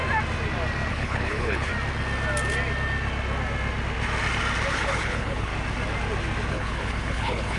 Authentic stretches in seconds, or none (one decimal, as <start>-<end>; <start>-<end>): 0.0-0.9; 1.7-4.7; 5.5-6.5